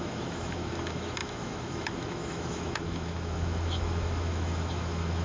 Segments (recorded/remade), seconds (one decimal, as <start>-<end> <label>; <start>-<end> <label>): 0.0-5.2 remade